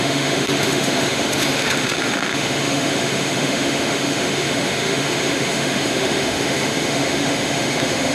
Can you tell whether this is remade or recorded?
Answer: remade